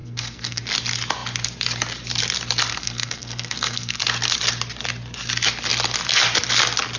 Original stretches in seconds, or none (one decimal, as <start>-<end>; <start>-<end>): 0.6-2.7; 4.0-7.0